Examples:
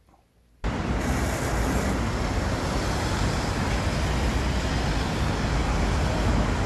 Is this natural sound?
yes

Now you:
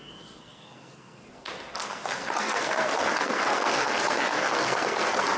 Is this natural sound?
no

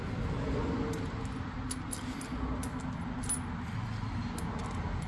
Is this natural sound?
yes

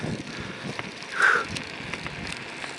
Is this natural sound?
yes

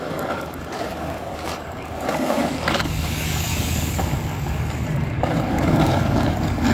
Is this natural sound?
no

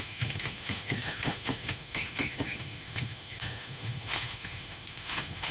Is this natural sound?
no